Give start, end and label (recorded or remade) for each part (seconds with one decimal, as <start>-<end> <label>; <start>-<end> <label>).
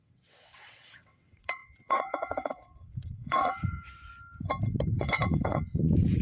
0.0-4.1 remade; 4.1-4.9 recorded; 4.9-6.2 remade